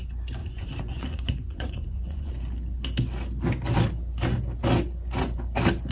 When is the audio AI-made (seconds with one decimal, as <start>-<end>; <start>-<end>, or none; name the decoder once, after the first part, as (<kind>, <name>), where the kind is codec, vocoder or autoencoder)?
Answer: 0.4-2.3 (vocoder, Vocos)